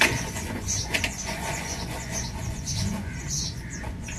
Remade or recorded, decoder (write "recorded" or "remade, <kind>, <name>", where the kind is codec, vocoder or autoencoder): remade, vocoder, Vocos